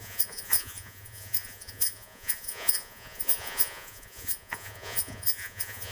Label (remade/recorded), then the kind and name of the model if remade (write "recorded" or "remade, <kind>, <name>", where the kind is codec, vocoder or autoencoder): remade, vocoder, Vocos